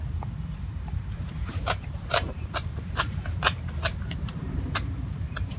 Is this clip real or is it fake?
fake